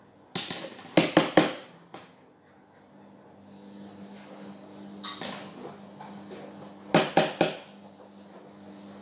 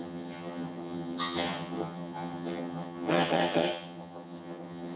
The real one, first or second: first